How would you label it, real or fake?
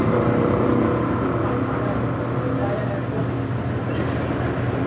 fake